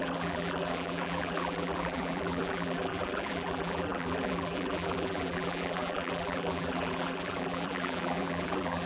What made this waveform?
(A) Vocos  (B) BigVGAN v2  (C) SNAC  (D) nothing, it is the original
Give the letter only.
B